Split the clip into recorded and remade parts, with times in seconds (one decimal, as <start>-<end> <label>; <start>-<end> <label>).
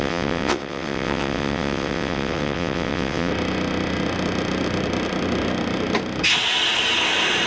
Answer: 0.0-3.3 remade; 3.3-7.5 recorded